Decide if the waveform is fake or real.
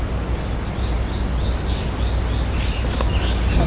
real